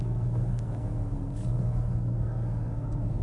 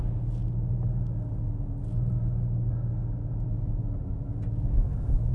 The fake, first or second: first